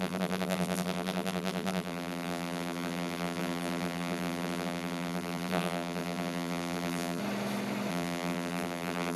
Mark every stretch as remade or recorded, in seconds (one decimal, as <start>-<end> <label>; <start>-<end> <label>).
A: 0.0-7.2 remade; 7.2-7.9 recorded; 7.9-9.2 remade